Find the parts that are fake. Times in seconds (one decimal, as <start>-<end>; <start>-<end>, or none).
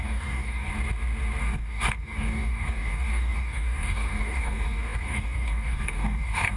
0.0-0.7; 1.4-6.6